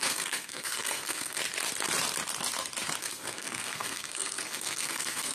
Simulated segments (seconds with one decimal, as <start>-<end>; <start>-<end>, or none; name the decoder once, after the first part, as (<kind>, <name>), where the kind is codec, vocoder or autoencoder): 0.0-1.4 (codec, SNAC); 3.0-5.3